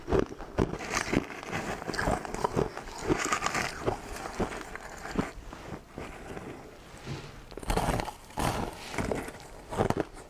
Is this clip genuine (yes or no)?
yes